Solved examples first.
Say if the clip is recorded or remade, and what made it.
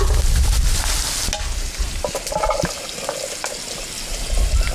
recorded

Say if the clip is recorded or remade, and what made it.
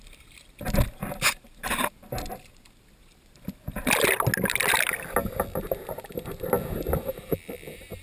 recorded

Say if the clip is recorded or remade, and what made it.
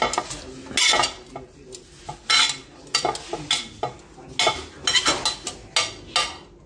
recorded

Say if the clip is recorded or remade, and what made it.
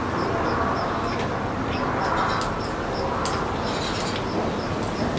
recorded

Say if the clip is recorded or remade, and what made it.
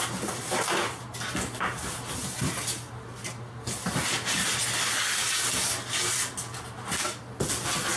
recorded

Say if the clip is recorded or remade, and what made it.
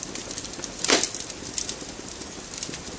recorded